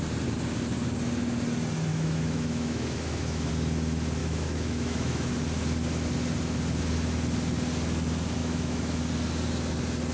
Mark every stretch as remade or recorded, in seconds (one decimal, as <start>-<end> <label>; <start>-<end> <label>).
0.0-1.9 recorded; 1.9-3.5 remade; 3.5-4.2 recorded; 4.2-5.3 remade; 5.3-8.4 recorded; 8.4-9.0 remade; 9.0-10.1 recorded

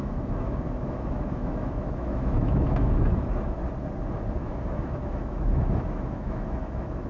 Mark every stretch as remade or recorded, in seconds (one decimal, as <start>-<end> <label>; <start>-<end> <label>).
0.0-3.6 remade; 3.6-4.4 recorded; 4.4-7.1 remade

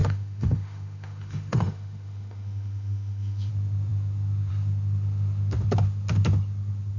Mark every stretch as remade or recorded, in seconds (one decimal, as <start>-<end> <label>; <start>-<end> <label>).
0.0-3.5 remade; 3.5-7.0 recorded

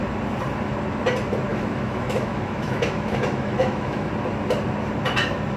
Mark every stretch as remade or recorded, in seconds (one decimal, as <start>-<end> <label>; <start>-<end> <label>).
0.0-1.5 recorded; 1.5-4.1 remade; 4.1-5.6 recorded